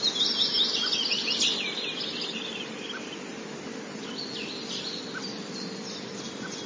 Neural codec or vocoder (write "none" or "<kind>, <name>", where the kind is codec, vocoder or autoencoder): none